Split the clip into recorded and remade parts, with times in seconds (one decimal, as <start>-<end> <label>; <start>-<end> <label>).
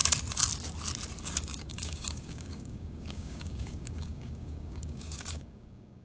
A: 0.0-1.2 recorded; 1.2-6.0 remade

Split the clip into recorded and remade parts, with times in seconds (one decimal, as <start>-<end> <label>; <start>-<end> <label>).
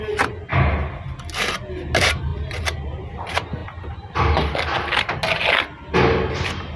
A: 0.0-0.5 recorded; 0.5-1.2 remade; 1.2-3.6 recorded; 3.6-4.5 remade; 4.5-6.8 recorded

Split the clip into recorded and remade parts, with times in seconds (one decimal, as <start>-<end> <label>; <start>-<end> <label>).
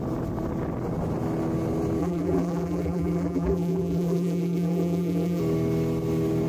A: 0.0-2.0 recorded; 2.0-5.4 remade; 5.4-6.5 recorded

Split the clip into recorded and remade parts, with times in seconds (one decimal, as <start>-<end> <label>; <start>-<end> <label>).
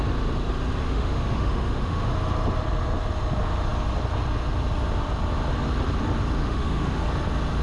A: 0.0-0.8 recorded; 0.8-2.1 remade; 2.1-6.4 recorded; 6.4-7.0 remade; 7.0-7.6 recorded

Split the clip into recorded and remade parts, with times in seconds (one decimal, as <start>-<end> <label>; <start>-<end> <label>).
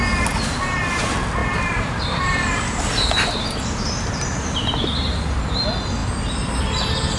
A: 0.0-1.4 recorded; 1.4-5.4 remade; 5.4-6.0 recorded; 6.0-6.5 remade; 6.5-7.2 recorded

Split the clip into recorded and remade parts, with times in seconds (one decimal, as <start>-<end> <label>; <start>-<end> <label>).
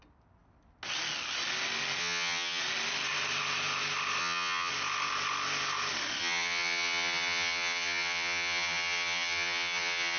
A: 0.0-2.0 recorded; 2.0-2.6 remade; 2.6-4.2 recorded; 4.2-4.7 remade; 4.7-6.2 recorded; 6.2-10.2 remade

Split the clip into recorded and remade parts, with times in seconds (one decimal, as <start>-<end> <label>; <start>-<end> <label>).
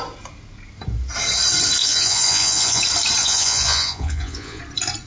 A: 0.0-1.8 recorded; 1.8-2.8 remade; 2.8-3.2 recorded; 3.2-4.6 remade; 4.6-5.1 recorded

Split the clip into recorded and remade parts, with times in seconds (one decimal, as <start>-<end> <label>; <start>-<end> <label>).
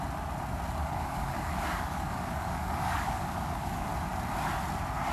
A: 0.0-0.8 recorded; 0.8-3.9 remade; 3.9-5.1 recorded